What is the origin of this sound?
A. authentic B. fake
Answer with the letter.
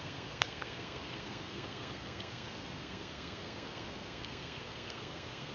B